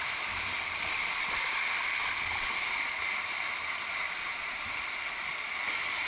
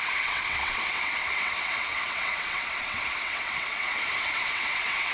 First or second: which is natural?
first